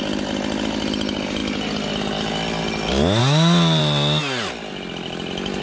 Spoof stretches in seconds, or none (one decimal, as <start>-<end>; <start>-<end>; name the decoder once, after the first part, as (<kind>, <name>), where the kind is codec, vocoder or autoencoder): none